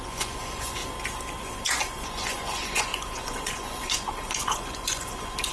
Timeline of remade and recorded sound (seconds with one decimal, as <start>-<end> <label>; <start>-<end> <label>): 0.0-0.8 remade; 0.8-1.4 recorded; 1.4-5.5 remade